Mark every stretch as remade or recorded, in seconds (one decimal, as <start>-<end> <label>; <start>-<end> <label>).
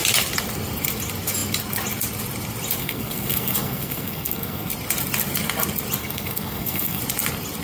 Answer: 0.0-2.8 recorded; 2.8-4.7 remade; 4.7-6.0 recorded; 6.0-7.0 remade; 7.0-7.6 recorded